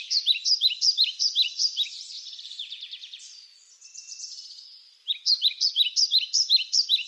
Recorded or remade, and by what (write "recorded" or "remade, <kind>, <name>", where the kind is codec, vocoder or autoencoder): remade, vocoder, BigVGAN v2